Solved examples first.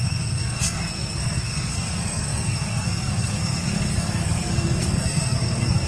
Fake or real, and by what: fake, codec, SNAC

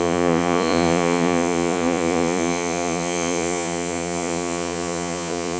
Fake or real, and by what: fake, vocoder, Vocos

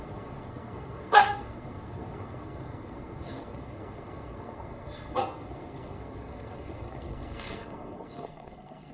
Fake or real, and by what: fake, codec, SNAC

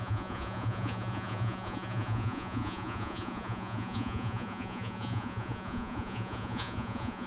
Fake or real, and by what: fake, vocoder, Vocos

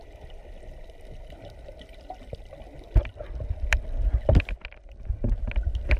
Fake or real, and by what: real